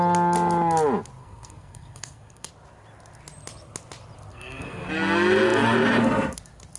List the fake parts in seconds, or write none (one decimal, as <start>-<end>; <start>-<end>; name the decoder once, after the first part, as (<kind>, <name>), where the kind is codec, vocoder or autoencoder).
1.2-2.5 (codec, SNAC); 4.3-4.9